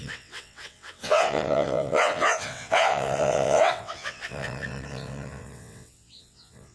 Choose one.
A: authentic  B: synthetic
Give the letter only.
B